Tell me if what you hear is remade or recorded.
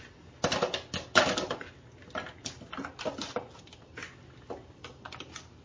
recorded